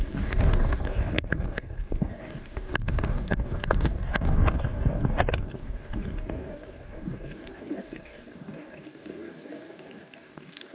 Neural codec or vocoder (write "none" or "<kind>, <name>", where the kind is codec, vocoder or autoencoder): codec, DAC